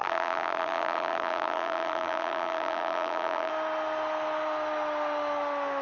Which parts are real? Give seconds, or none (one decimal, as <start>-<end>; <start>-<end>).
3.5-5.8